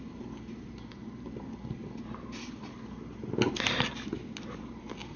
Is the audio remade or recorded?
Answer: recorded